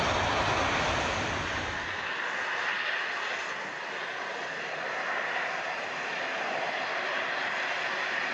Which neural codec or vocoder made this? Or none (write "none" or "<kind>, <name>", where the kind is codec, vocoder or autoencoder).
none